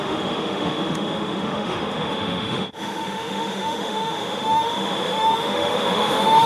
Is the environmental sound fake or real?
fake